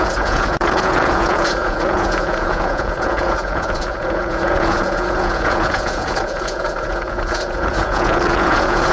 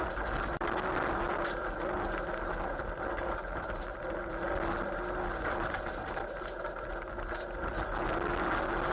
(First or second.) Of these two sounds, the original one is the second